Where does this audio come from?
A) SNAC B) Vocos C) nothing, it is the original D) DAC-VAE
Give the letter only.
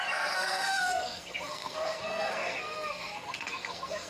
A